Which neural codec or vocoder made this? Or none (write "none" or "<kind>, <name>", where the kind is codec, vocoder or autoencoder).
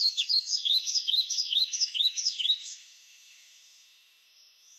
autoencoder, DAC-VAE